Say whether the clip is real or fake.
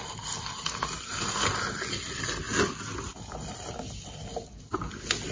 real